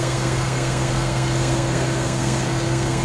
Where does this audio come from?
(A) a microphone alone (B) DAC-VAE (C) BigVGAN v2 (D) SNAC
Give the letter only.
D